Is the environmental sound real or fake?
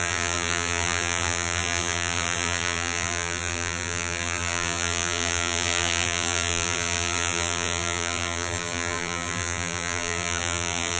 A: fake